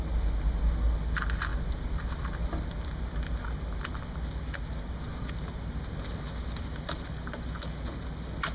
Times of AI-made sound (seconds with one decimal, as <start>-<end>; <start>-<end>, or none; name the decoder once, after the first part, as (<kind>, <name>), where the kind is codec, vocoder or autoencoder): none